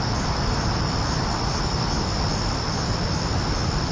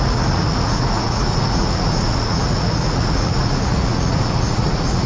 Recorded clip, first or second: first